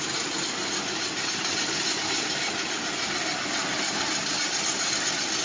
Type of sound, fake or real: real